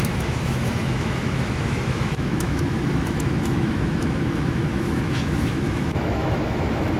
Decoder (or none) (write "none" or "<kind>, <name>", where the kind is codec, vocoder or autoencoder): autoencoder, DAC-VAE